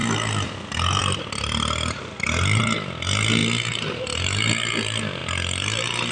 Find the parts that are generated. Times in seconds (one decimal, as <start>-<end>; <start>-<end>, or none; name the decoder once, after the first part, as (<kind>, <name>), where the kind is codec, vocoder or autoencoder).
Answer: 1.0-2.6 (vocoder, BigVGAN v2)